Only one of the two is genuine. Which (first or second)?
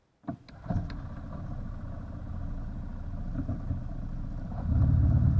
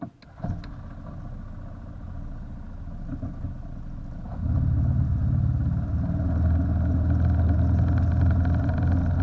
second